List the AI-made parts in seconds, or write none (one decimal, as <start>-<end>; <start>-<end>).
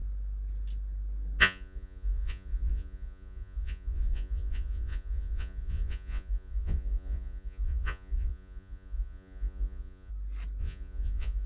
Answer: 1.4-10.1; 10.6-11.5